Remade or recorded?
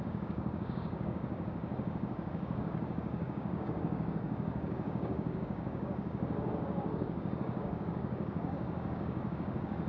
remade